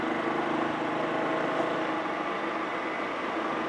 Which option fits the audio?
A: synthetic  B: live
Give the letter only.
B